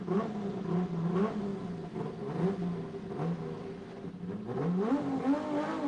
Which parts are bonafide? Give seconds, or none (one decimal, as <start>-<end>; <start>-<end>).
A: 0.0-5.9